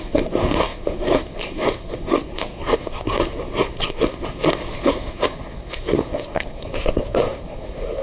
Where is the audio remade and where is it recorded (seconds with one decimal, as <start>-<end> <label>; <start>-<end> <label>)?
0.0-8.0 remade

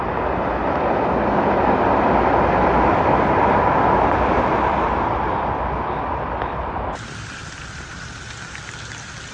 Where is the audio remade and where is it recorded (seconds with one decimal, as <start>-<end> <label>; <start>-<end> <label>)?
0.0-7.4 recorded; 7.4-8.2 remade; 8.2-9.3 recorded